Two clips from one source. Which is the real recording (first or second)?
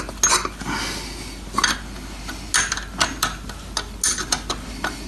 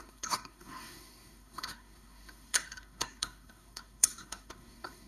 first